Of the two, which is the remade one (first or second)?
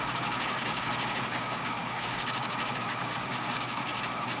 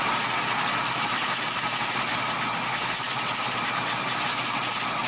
first